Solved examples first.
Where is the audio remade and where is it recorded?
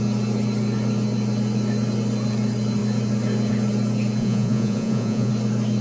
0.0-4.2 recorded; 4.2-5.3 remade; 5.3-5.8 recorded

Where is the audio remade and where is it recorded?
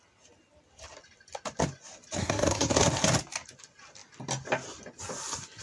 0.0-2.2 recorded; 2.2-2.7 remade; 2.7-5.6 recorded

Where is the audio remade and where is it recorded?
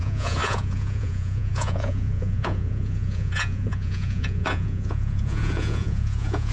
0.0-6.5 remade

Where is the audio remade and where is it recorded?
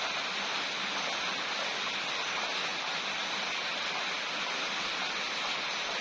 0.0-6.0 recorded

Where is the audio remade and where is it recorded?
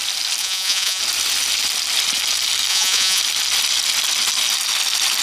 0.0-0.4 recorded; 0.4-1.0 remade; 1.0-2.7 recorded; 2.7-3.2 remade; 3.2-5.2 recorded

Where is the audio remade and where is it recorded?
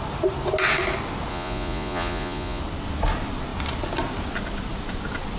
0.0-1.3 recorded; 1.3-2.6 remade; 2.6-5.4 recorded